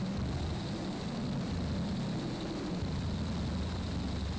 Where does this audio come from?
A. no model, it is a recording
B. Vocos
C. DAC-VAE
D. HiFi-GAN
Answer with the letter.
A